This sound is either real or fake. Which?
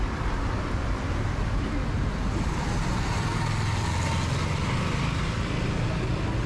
real